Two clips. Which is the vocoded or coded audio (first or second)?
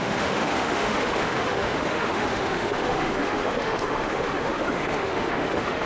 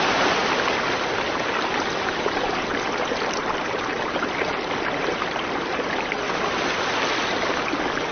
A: first